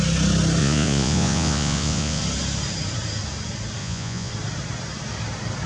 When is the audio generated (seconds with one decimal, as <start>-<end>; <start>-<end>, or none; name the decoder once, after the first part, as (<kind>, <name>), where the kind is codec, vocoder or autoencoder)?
0.6-2.2 (vocoder, Vocos); 3.8-4.3